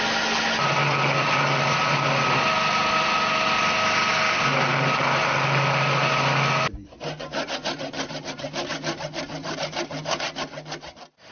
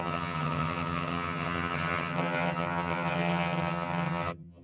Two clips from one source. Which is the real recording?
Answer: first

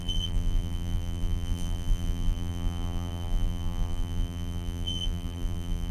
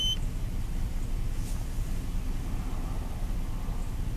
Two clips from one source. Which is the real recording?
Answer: second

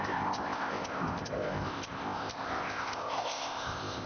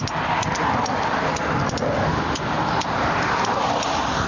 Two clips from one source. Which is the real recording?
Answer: second